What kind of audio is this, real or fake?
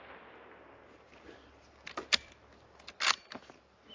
real